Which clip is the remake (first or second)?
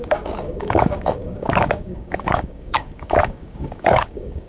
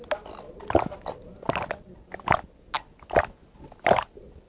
first